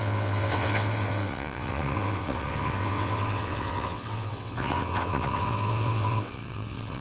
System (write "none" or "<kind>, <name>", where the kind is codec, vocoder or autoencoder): vocoder, WaveNeXt